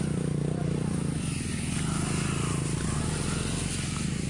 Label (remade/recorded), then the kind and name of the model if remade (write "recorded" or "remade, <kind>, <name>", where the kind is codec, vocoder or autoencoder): recorded